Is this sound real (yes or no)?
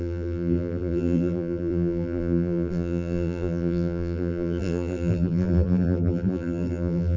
no